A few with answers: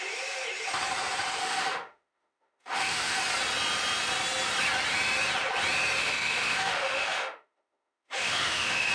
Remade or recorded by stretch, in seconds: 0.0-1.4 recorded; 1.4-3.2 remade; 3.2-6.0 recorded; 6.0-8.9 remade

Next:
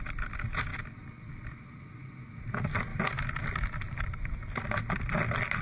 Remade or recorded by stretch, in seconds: 0.0-5.6 recorded

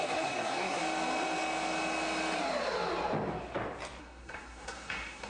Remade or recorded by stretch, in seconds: 0.0-0.8 remade; 0.8-4.0 recorded; 4.0-5.3 remade

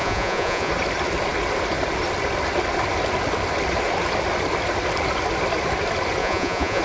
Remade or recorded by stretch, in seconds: 0.0-0.7 remade; 0.7-6.2 recorded; 6.2-6.8 remade

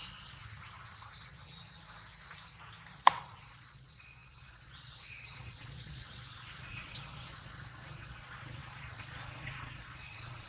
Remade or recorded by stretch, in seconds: 0.0-0.4 remade; 0.4-2.9 recorded; 2.9-10.5 remade

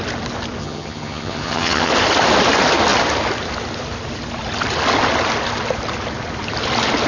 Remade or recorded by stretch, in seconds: 0.0-0.6 recorded; 0.6-1.9 remade; 1.9-7.1 recorded

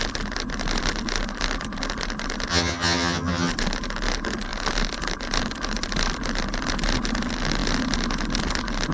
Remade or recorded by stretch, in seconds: 0.0-2.5 recorded; 2.5-3.5 remade; 3.5-8.9 recorded